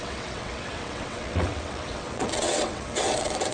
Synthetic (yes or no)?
yes